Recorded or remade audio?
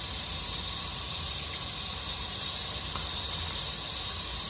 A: remade